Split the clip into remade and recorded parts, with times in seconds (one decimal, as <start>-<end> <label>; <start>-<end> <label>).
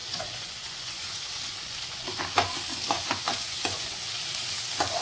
0.0-2.2 remade; 2.2-2.7 recorded; 2.7-4.3 remade; 4.3-5.0 recorded